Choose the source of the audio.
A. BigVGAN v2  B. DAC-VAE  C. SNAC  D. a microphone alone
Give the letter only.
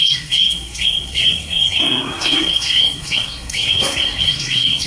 C